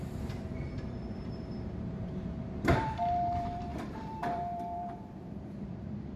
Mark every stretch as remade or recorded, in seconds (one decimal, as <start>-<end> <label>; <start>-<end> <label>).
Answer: 0.0-6.2 remade